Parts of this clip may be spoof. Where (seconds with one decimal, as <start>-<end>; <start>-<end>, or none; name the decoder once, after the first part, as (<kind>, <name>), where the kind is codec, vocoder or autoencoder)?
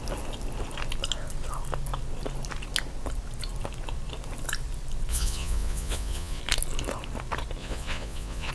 5.1-6.4 (vocoder, Vocos); 7.6-8.5